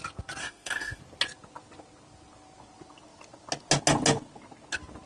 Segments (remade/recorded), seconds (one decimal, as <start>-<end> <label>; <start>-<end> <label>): 0.0-0.4 recorded; 0.4-1.0 remade; 1.0-5.1 recorded